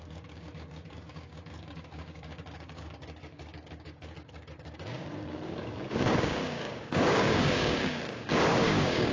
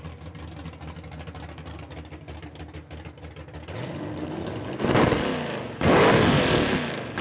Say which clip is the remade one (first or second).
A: first